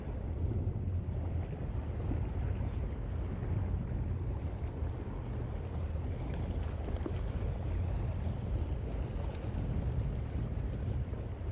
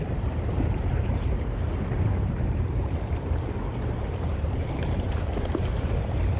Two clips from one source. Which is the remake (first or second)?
second